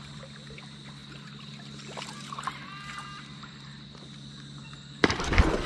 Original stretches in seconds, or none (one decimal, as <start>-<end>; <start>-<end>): 1.0-2.3